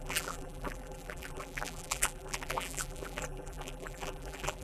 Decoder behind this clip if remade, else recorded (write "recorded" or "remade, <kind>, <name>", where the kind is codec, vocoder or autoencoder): remade, vocoder, BigVGAN v2